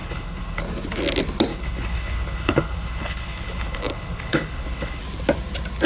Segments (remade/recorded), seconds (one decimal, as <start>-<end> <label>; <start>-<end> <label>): 0.0-0.6 remade; 0.6-1.5 recorded; 1.5-5.0 remade; 5.0-5.9 recorded